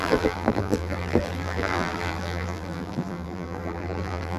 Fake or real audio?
fake